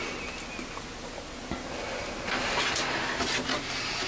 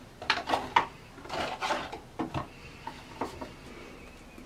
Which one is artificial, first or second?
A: second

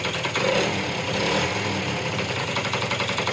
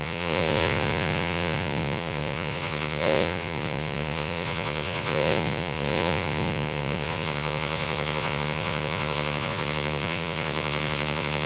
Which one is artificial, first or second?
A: second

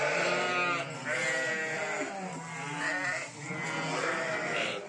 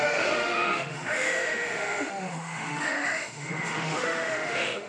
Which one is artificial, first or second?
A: second